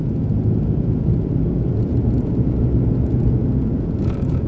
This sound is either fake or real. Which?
fake